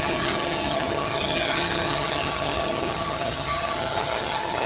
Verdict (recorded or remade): remade